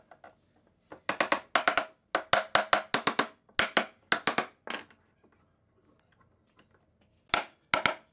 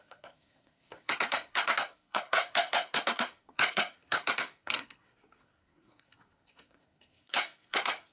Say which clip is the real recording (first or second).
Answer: first